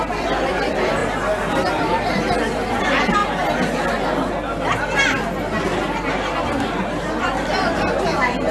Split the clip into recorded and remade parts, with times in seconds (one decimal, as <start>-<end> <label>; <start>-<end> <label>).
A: 0.0-3.2 remade; 3.2-7.1 recorded; 7.1-8.5 remade